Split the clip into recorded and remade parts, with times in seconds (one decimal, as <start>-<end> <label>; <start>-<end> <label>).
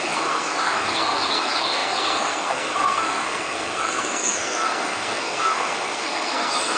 0.0-6.8 remade